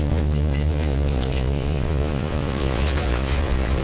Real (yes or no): no